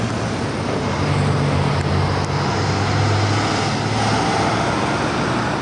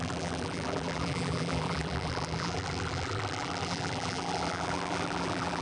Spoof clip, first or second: second